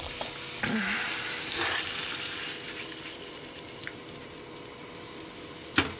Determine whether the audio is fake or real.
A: real